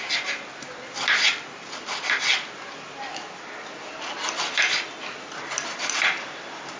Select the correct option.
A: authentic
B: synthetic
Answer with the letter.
A